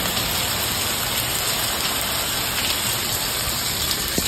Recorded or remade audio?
recorded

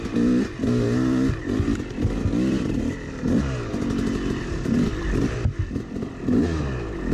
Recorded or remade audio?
recorded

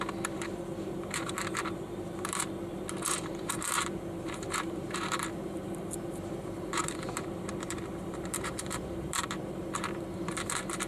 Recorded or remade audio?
remade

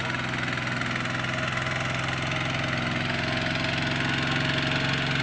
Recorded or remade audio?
recorded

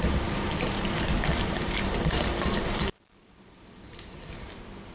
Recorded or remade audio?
remade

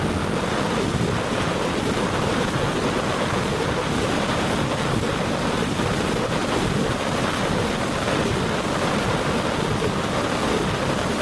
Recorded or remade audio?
recorded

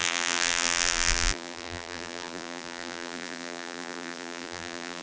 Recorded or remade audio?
remade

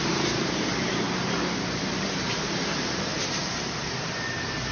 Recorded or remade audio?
remade